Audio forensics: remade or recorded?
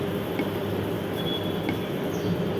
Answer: recorded